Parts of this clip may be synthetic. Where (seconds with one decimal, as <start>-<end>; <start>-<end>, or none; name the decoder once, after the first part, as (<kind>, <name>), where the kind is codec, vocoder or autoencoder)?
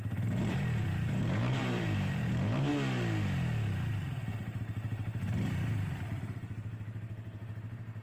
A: 0.0-2.7 (vocoder, BigVGAN v2); 4.6-8.0